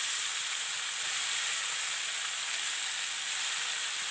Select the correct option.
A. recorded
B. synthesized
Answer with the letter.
A